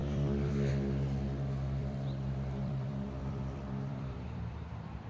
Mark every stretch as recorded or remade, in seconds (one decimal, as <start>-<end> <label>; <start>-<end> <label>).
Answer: 0.0-0.7 remade; 0.7-1.8 recorded; 1.8-5.1 remade